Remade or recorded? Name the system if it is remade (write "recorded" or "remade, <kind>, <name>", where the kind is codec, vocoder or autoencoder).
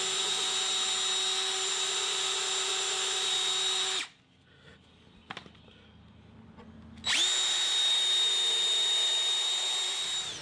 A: recorded